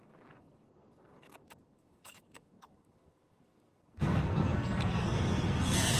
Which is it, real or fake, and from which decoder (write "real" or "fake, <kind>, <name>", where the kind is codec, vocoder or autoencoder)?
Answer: fake, codec, SNAC